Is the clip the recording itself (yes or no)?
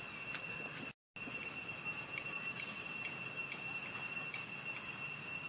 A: yes